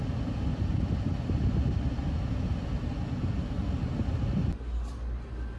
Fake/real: real